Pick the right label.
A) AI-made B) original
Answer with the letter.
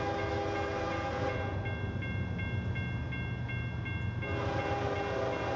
B